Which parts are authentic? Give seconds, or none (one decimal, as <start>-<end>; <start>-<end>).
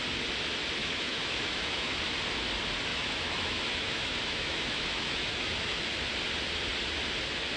0.0-0.8; 2.0-2.9; 5.8-7.6